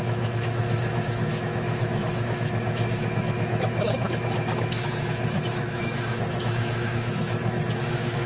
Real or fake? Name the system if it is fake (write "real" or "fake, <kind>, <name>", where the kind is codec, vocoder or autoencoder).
fake, autoencoder, DAC-VAE